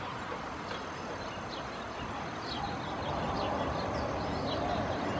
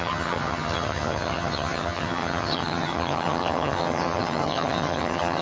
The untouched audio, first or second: first